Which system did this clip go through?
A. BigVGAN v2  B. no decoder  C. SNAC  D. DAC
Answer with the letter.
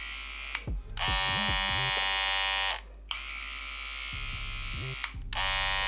B